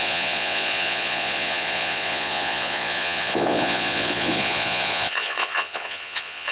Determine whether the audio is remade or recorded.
remade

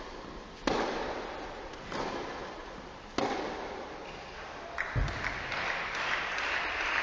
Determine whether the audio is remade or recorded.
recorded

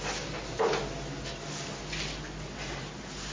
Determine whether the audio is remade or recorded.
recorded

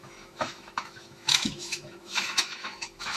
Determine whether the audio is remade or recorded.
remade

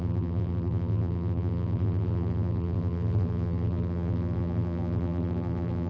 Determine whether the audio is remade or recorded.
remade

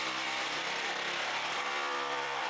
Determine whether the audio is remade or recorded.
remade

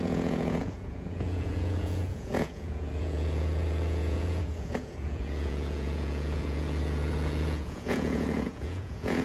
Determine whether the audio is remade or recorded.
remade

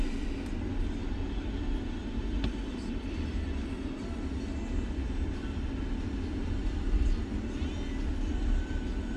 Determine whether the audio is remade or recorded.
recorded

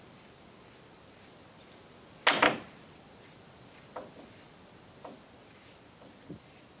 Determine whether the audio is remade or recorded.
recorded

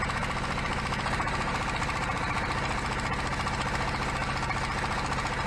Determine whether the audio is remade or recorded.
recorded